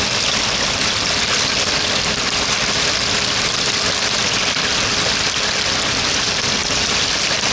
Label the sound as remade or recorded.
recorded